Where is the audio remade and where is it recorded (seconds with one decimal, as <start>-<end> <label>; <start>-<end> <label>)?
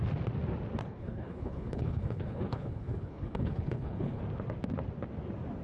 0.0-0.8 recorded; 0.8-4.2 remade; 4.2-5.6 recorded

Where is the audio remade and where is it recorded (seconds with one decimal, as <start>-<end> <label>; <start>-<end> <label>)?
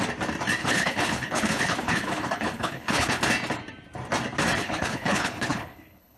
0.0-0.6 recorded; 0.6-3.2 remade; 3.2-4.6 recorded; 4.6-6.2 remade